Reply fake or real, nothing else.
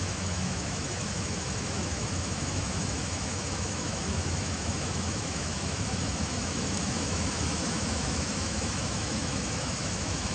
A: fake